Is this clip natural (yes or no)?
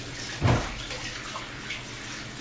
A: yes